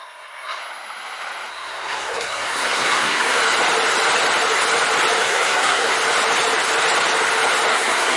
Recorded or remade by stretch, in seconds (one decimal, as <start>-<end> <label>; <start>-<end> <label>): 0.0-0.6 remade; 0.6-1.5 recorded; 1.5-3.4 remade; 3.4-5.2 recorded; 5.2-5.9 remade; 5.9-7.7 recorded; 7.7-8.2 remade